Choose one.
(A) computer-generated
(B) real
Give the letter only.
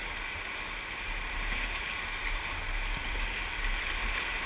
B